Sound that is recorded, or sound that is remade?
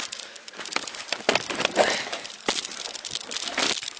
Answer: remade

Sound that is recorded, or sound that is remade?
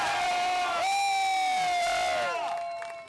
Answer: recorded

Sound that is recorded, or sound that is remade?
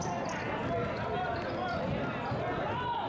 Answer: recorded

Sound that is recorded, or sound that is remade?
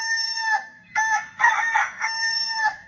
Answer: remade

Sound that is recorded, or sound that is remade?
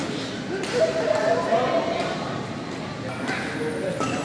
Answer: recorded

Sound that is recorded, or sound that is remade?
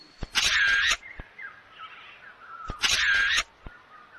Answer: recorded